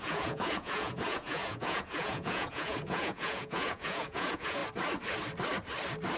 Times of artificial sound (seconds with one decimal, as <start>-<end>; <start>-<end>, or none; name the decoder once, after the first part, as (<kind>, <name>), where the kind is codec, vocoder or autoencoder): 0.0-4.6 (vocoder, Vocos)